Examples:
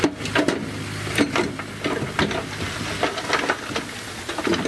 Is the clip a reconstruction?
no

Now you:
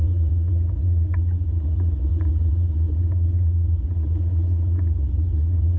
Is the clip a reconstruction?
yes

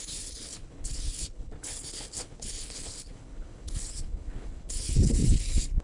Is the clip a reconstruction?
yes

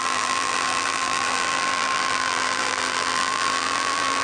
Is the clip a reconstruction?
yes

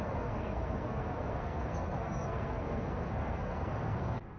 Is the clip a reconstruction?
yes